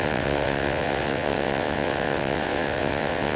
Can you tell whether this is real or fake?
fake